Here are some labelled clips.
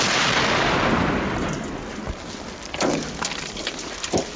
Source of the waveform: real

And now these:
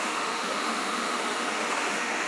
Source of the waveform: fake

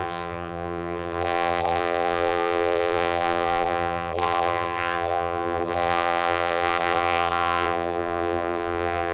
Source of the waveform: fake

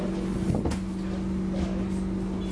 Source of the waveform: real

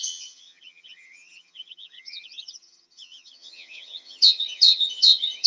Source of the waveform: fake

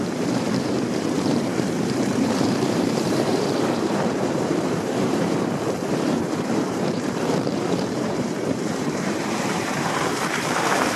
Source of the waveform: fake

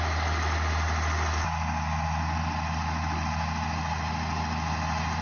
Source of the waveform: real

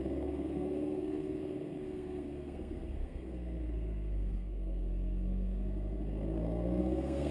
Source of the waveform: fake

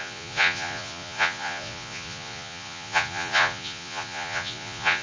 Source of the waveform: fake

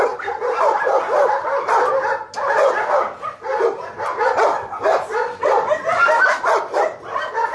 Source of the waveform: real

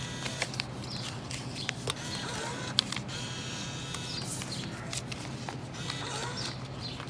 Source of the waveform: real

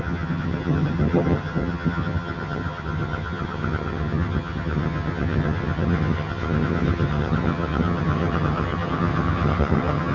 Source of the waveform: fake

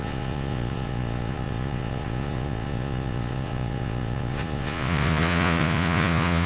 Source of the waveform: fake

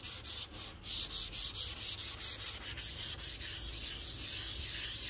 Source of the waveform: real